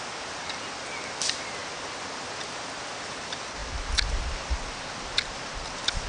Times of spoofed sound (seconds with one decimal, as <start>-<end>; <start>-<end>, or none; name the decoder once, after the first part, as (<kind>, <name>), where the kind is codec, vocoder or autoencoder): none